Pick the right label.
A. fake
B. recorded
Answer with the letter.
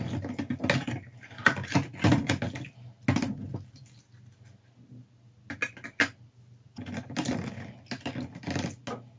B